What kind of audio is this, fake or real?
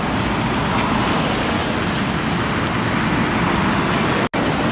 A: real